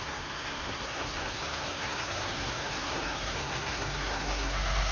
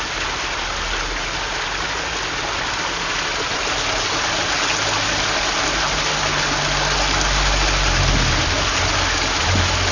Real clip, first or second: second